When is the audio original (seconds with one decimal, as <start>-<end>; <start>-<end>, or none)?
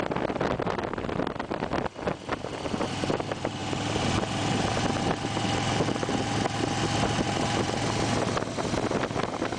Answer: 0.0-9.6